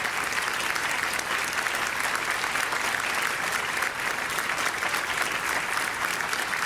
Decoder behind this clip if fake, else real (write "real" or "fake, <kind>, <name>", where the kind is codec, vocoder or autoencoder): real